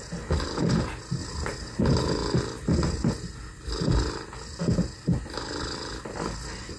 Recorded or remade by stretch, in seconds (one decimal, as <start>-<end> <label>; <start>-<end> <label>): 0.0-6.8 recorded